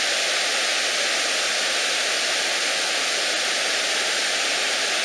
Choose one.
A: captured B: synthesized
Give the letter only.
A